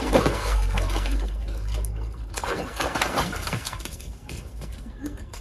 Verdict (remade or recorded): remade